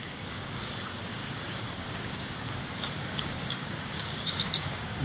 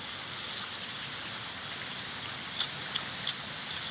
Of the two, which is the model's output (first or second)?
first